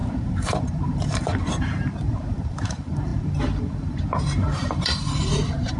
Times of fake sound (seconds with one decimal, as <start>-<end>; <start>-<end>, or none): 0.0-5.8